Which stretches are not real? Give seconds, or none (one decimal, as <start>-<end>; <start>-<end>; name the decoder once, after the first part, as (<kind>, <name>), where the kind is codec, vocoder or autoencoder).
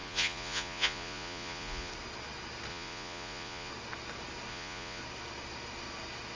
0.0-1.9 (vocoder, Vocos); 2.7-3.7; 4.5-5.0